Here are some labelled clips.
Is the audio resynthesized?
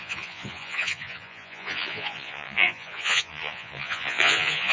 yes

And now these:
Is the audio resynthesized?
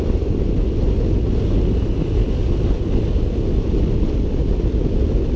no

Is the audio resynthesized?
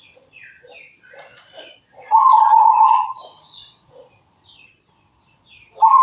yes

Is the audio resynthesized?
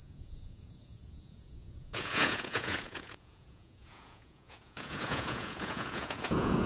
yes